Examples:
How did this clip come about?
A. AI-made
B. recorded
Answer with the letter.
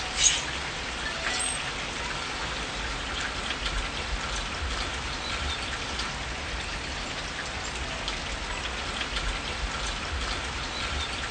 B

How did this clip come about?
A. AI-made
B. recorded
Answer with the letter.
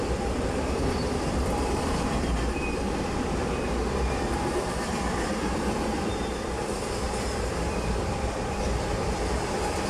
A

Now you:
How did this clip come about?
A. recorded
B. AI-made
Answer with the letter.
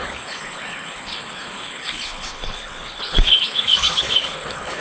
B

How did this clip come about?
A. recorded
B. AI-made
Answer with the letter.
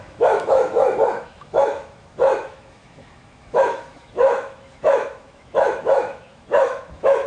B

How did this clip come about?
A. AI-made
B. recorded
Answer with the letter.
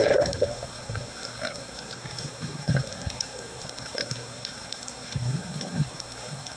A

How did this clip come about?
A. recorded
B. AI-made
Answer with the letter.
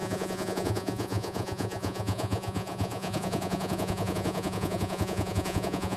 B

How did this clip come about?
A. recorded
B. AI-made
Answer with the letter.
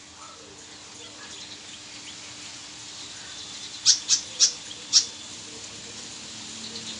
A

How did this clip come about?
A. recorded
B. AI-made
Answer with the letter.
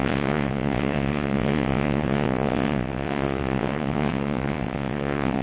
B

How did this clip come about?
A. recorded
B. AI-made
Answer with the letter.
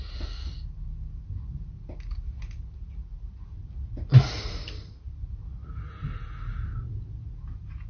A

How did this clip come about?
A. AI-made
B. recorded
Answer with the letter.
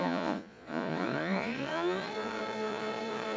A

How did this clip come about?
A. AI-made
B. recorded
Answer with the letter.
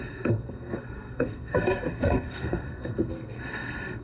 A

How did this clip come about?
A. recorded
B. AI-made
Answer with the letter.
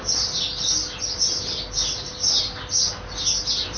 A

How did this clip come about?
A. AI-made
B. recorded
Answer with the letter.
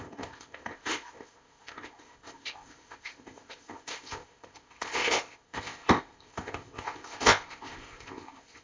A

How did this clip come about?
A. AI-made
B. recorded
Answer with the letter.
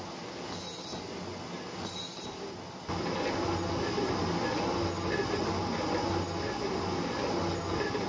B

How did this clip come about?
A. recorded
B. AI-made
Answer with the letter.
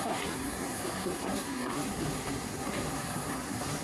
B